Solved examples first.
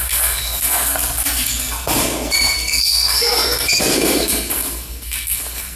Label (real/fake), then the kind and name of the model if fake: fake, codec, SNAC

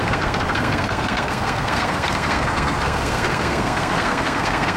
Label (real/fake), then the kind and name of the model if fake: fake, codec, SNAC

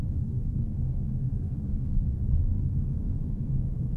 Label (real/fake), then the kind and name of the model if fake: fake, codec, SNAC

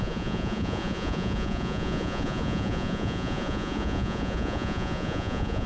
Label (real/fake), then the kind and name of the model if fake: fake, vocoder, Vocos